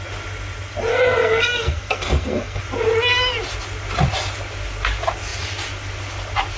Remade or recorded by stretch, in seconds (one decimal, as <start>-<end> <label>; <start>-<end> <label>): 0.0-0.9 recorded; 0.9-2.6 remade; 2.6-6.6 recorded